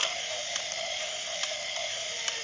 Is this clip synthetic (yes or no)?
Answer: yes